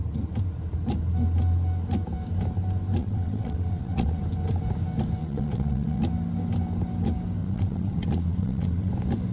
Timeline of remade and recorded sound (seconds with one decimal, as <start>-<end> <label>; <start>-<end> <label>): 0.0-3.0 recorded; 3.0-4.2 remade; 4.2-5.2 recorded; 5.2-6.0 remade; 6.0-7.4 recorded; 7.4-8.9 remade; 8.9-9.3 recorded